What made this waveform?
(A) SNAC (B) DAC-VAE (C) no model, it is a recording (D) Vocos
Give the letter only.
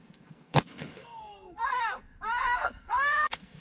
A